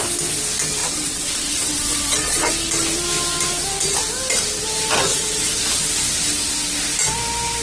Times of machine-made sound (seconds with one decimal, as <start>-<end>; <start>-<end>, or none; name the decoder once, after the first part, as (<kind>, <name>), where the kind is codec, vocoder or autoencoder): 0.8-2.5 (vocoder, WaveNeXt); 5.1-5.6

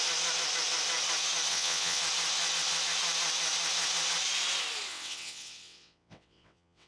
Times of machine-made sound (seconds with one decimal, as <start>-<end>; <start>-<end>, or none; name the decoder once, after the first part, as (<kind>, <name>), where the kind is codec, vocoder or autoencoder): 1.5-2.0 (vocoder, WaveNeXt); 4.9-6.9

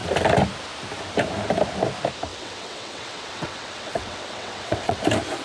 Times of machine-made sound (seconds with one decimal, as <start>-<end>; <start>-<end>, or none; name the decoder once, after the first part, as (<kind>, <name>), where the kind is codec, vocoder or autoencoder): 2.3-5.0 (vocoder, WaveNeXt)

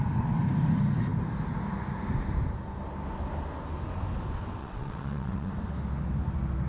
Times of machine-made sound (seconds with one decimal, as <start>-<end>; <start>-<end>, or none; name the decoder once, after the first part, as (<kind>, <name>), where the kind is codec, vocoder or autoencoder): 4.6-5.5 (vocoder, WaveNeXt)

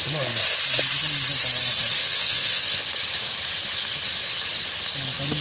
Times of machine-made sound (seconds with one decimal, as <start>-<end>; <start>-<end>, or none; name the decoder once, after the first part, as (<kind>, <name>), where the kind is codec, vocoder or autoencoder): 2.0-2.9 (vocoder, WaveNeXt)

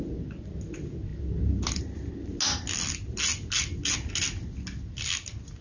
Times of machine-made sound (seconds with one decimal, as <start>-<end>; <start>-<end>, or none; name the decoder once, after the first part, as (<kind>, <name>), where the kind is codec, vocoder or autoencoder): none